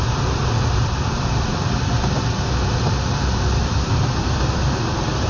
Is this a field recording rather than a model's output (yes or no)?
yes